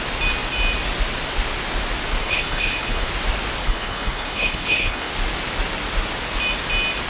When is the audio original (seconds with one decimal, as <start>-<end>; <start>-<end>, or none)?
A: 0.0-2.2; 3.1-3.6; 5.1-7.1